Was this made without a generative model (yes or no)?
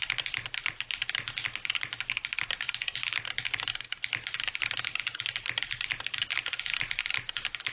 yes